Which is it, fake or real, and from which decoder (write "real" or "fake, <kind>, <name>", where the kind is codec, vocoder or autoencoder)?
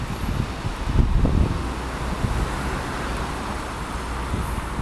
real